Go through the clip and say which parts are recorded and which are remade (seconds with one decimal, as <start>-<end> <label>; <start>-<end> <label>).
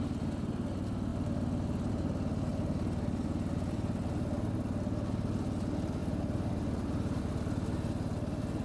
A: 0.0-6.0 recorded; 6.0-7.2 remade; 7.2-8.6 recorded